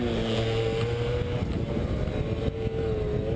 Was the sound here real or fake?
real